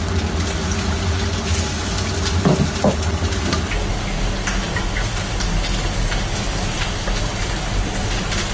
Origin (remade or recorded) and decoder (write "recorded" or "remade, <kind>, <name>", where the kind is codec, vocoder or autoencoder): recorded